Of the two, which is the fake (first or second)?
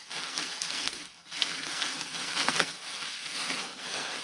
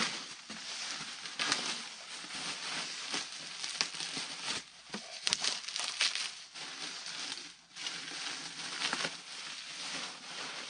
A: first